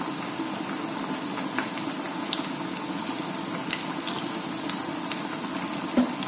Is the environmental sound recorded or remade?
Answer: recorded